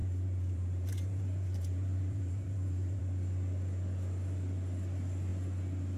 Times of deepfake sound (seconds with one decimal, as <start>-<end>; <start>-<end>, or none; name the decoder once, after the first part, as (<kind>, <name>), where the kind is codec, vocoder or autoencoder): 0.0-3.0 (vocoder, BigVGAN v2)